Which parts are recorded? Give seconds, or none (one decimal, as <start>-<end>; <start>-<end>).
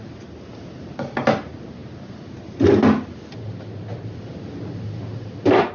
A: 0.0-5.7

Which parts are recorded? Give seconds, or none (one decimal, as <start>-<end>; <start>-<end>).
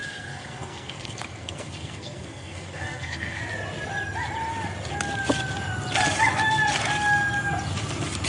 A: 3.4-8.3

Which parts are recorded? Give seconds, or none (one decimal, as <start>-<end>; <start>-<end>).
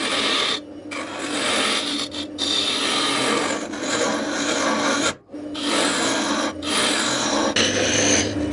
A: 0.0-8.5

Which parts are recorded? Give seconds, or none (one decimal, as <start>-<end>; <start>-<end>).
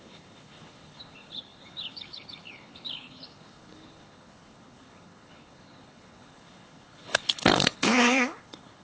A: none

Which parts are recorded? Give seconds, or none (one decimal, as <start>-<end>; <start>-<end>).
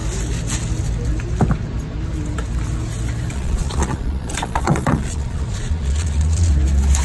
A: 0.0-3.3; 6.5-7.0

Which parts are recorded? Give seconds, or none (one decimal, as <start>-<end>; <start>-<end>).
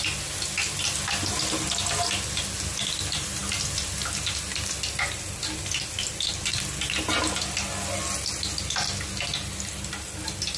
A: 0.0-10.6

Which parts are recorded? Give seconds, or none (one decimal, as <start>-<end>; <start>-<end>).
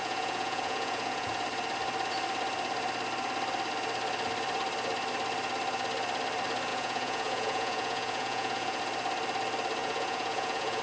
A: 1.3-6.7; 8.8-9.8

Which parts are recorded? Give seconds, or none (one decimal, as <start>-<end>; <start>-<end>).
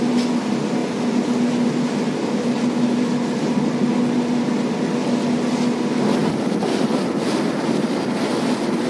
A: 0.0-8.9